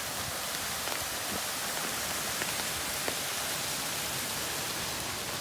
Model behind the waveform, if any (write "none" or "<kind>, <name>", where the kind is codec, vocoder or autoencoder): none